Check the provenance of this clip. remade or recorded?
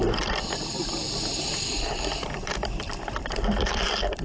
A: remade